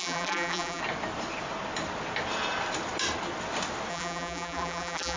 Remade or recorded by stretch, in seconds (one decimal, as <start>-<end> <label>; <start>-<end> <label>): 0.0-0.8 remade; 0.8-3.9 recorded; 3.9-5.2 remade